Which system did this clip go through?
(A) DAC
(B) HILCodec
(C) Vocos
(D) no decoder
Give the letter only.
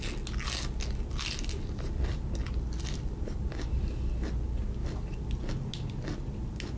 D